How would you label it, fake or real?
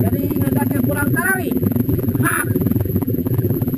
fake